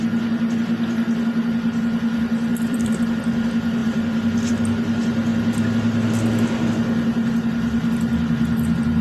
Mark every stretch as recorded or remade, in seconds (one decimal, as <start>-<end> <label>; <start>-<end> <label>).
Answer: 0.0-2.5 recorded; 2.5-3.2 remade; 3.2-3.8 recorded; 3.8-4.5 remade; 4.5-9.0 recorded